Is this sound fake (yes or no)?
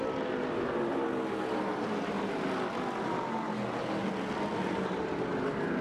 no